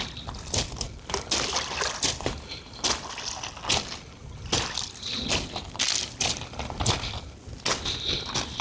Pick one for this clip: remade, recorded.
recorded